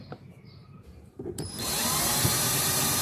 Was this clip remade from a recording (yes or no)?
yes